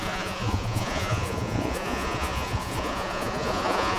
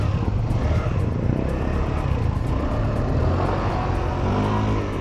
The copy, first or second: first